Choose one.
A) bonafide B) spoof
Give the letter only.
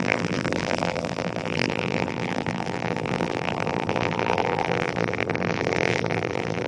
B